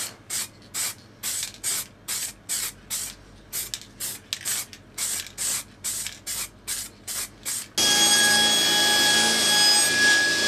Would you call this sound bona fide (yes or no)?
yes